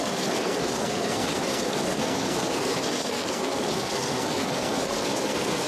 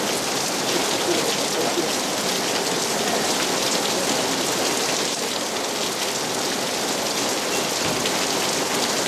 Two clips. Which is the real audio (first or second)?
second